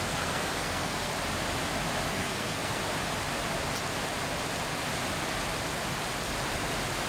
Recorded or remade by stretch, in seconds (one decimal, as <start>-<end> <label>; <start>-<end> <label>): 0.0-1.1 remade; 1.1-2.1 recorded; 2.1-2.8 remade; 2.8-7.1 recorded